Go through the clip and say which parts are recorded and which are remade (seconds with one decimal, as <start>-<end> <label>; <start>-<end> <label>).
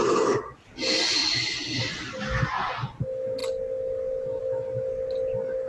0.0-1.2 recorded; 1.2-3.0 remade; 3.0-5.7 recorded